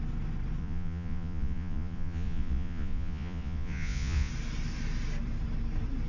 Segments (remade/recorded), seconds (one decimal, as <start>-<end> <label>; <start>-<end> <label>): 0.0-0.6 recorded; 0.6-4.3 remade; 4.3-6.1 recorded